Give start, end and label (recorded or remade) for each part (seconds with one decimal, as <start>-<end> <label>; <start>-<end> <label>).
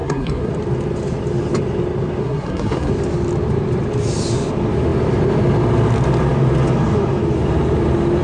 0.0-0.5 remade; 0.5-2.2 recorded; 2.2-2.9 remade; 2.9-8.2 recorded